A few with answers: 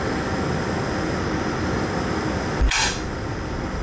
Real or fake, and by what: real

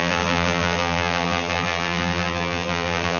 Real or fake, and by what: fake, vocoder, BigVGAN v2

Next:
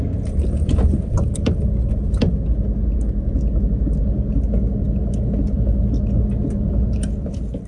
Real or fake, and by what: real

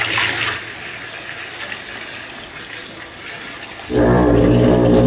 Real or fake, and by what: real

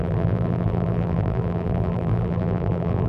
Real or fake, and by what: fake, vocoder, BigVGAN v2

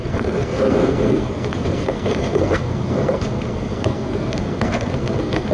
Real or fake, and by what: fake, codec, SNAC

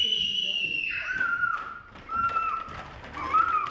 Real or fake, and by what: real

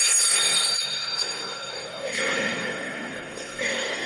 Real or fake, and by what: fake, codec, SNAC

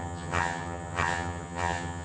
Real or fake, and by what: fake, vocoder, HiFi-GAN